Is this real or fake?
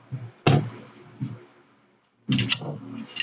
real